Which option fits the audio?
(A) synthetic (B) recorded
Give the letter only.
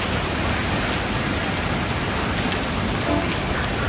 B